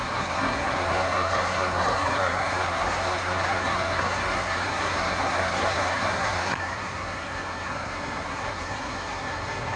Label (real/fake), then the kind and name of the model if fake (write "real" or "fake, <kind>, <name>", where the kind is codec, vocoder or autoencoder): fake, codec, SNAC